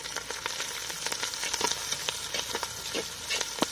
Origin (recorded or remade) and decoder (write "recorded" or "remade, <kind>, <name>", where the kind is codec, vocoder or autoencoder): recorded